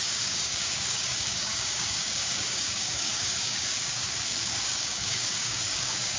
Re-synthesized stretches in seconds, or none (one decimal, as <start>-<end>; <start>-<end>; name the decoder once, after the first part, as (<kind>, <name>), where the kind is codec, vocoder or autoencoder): 0.0-6.2 (codec, DAC)

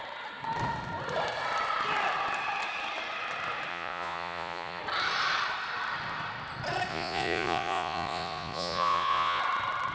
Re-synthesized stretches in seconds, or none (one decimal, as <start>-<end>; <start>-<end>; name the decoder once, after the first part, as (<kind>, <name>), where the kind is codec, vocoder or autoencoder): 3.7-4.8 (vocoder, Vocos); 6.9-9.4